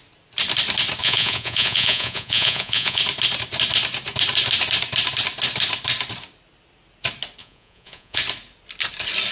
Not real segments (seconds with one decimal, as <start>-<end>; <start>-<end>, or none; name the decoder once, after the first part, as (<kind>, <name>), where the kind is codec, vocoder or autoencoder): 1.0-3.0 (vocoder, Vocos); 7.4-8.2